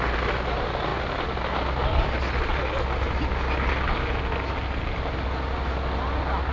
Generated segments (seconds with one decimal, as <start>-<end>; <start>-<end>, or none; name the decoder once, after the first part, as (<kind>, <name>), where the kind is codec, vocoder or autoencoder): none